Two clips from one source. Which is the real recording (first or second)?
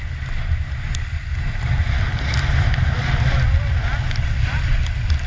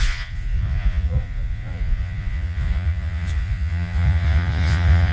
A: first